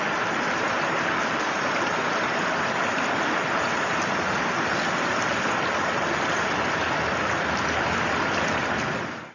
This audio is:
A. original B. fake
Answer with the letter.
A